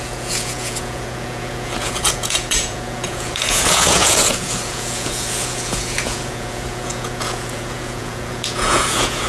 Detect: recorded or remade remade